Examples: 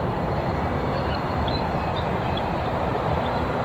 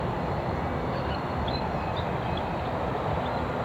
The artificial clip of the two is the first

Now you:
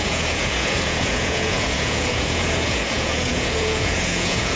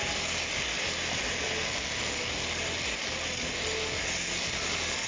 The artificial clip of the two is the first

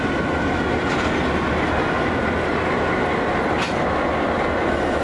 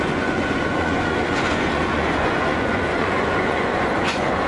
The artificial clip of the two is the second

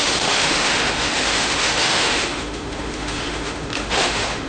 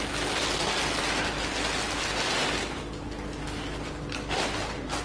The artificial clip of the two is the first